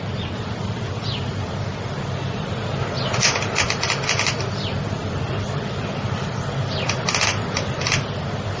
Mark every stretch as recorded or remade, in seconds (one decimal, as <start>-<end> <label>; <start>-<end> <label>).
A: 0.0-8.6 recorded